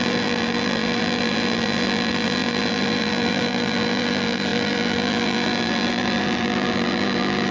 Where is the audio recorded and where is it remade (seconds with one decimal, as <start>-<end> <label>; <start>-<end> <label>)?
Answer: 0.0-7.5 remade